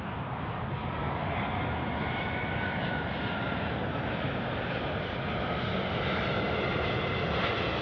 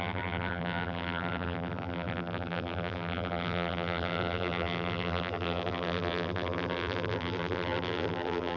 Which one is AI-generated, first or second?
second